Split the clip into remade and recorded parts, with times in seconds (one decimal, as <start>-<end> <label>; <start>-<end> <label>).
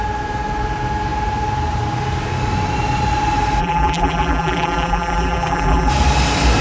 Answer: 0.0-3.6 recorded; 3.6-5.9 remade; 5.9-6.6 recorded